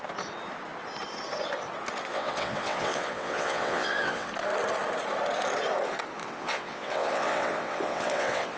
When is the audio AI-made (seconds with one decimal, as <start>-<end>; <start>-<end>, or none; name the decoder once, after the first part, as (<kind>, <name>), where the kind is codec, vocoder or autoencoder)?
2.1-4.3 (vocoder, WaveNeXt); 6.2-8.6